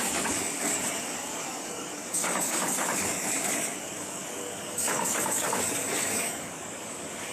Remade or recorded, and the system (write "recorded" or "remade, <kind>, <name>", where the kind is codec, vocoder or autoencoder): remade, codec, DAC